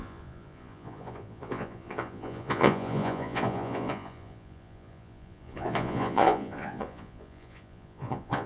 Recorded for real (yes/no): no